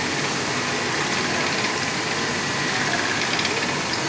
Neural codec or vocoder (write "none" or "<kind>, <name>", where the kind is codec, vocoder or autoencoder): none